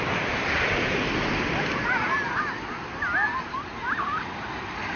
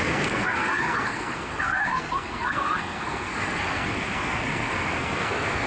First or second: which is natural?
first